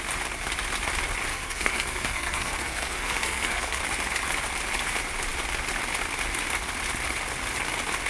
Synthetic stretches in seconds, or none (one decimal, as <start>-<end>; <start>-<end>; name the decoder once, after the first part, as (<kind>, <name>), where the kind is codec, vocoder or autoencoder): 1.3-3.8 (codec, SNAC)